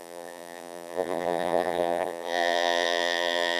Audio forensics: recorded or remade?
remade